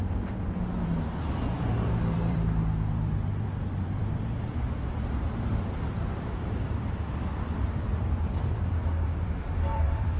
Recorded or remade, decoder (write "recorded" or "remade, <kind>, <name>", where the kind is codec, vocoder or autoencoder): remade, vocoder, BigVGAN v2